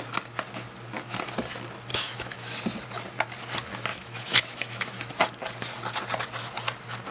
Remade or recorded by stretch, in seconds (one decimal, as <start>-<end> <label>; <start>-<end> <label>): 0.0-1.9 recorded; 1.9-2.6 remade; 2.6-3.9 recorded; 3.9-5.2 remade; 5.2-7.1 recorded